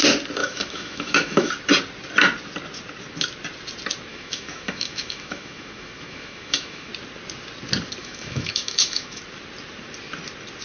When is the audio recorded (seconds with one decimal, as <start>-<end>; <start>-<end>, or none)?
0.0-0.4; 1.5-4.1; 6.9-8.0; 9.2-10.6